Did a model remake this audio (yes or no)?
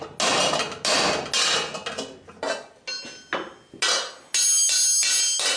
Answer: no